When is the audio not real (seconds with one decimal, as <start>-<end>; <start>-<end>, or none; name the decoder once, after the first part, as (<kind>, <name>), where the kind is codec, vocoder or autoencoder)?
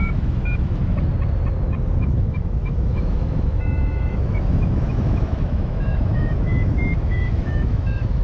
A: 0.0-0.8 (autoencoder, DAC-VAE); 2.0-8.2